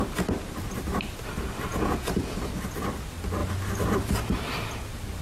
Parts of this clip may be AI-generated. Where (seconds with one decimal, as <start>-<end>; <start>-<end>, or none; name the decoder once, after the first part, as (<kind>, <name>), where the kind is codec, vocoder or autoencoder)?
1.7-2.4 (vocoder, Vocos)